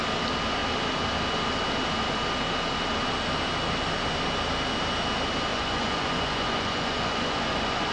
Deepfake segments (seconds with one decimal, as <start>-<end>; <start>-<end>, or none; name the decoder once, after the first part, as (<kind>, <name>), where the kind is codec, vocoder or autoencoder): 5.5-7.9 (vocoder, Vocos)

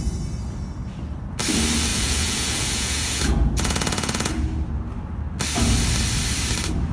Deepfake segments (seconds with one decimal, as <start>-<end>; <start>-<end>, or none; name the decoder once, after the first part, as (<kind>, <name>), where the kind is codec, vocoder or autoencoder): 1.9-4.3 (vocoder, Vocos)

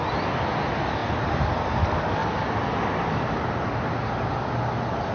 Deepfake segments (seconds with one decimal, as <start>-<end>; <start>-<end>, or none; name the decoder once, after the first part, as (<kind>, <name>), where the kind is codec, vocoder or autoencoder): none

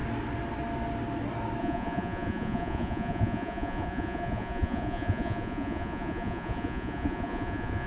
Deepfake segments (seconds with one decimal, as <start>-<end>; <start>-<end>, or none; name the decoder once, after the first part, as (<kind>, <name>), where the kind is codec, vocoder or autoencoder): 1.6-7.9 (vocoder, Vocos)

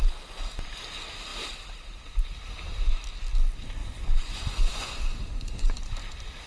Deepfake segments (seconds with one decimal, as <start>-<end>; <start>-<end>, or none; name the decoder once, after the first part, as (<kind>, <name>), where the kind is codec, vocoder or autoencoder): 3.8-5.7 (vocoder, Vocos)